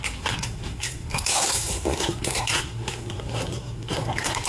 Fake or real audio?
fake